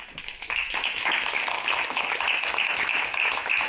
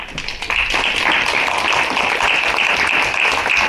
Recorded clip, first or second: second